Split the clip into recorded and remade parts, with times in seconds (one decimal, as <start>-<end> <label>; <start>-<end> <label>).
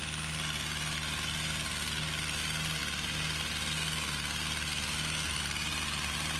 0.0-6.4 recorded